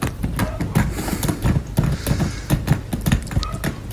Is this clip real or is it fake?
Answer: real